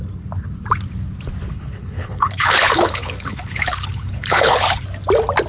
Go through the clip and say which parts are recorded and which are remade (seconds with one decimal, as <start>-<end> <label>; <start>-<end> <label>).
0.0-1.5 recorded; 1.5-4.8 remade; 4.8-5.5 recorded

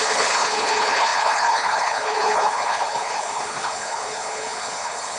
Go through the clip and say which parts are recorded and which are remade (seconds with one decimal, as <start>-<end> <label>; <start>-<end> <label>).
0.0-5.2 remade

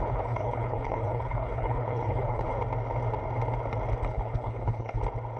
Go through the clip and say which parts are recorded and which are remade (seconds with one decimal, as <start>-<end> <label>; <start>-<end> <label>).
0.0-2.6 remade; 2.6-4.1 recorded; 4.1-5.0 remade; 5.0-5.4 recorded

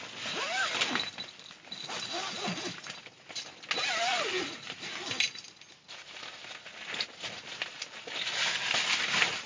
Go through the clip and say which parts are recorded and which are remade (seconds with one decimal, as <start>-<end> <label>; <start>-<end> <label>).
0.0-9.5 recorded